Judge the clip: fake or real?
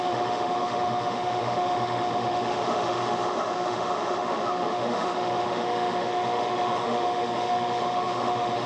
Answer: fake